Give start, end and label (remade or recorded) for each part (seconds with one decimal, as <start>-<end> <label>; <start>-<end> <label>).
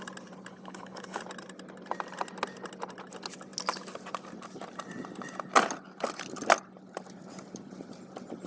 0.0-0.5 recorded; 0.5-1.2 remade; 1.2-8.5 recorded